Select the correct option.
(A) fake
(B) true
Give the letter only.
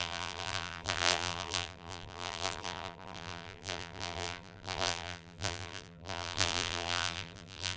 A